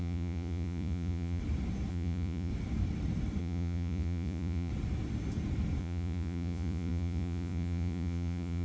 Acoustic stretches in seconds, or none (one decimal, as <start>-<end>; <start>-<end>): 1.4-1.9; 2.5-3.4; 4.7-5.8